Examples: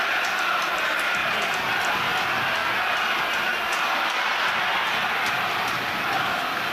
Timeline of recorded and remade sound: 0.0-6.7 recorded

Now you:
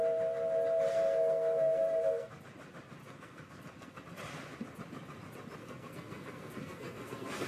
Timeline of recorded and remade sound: 0.0-0.9 recorded; 0.9-2.3 remade; 2.3-3.0 recorded; 3.0-4.0 remade; 4.0-5.6 recorded; 5.6-7.5 remade

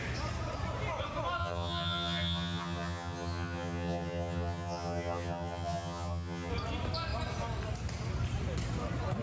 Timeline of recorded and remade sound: 0.0-1.4 recorded; 1.4-6.5 remade; 6.5-9.2 recorded

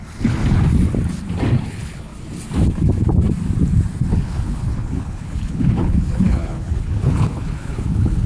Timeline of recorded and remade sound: 0.0-0.4 remade; 0.4-1.7 recorded; 1.7-2.1 remade; 2.1-4.1 recorded; 4.1-8.3 remade

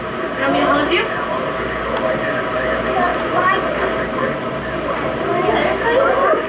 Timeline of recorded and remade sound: 0.0-3.1 recorded; 3.1-5.5 remade; 5.5-6.5 recorded